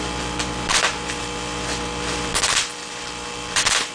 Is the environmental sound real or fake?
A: fake